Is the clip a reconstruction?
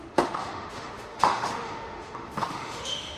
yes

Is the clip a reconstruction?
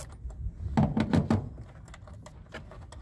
no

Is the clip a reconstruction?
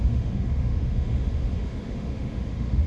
yes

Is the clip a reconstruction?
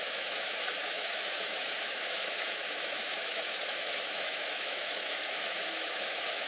yes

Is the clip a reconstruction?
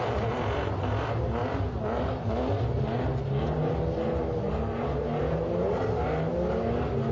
no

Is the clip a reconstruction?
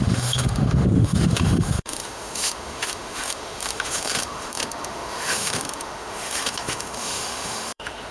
yes